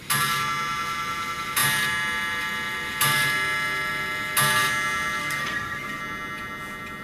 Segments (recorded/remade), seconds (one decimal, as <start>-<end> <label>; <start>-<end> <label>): 0.0-5.2 recorded; 5.2-6.0 remade; 6.0-7.0 recorded